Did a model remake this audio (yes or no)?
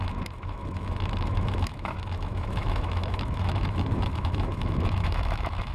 yes